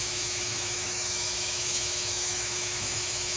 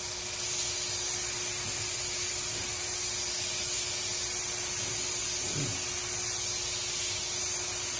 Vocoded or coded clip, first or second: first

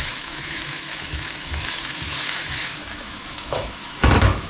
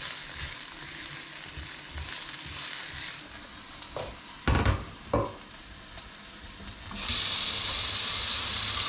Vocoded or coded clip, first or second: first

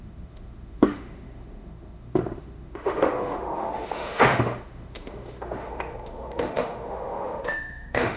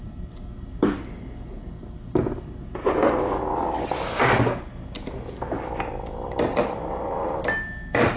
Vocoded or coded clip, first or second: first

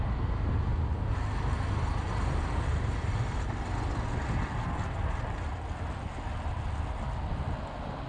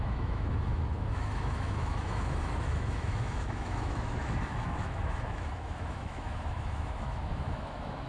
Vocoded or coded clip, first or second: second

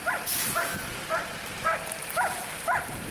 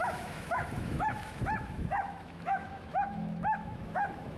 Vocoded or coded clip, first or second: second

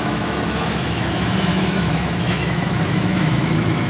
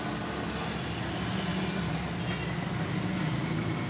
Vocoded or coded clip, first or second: first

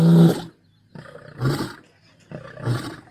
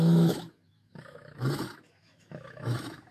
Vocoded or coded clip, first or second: second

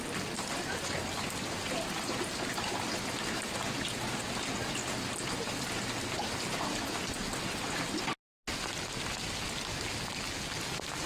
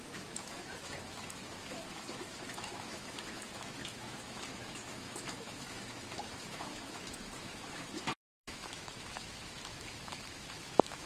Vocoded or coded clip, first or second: second